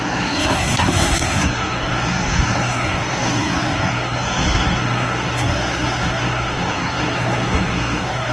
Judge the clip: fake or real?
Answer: fake